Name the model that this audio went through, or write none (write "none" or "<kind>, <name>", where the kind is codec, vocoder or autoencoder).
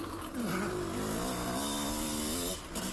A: none